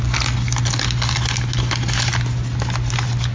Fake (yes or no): no